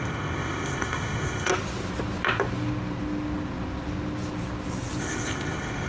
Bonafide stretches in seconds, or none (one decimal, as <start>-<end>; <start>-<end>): 1.5-5.0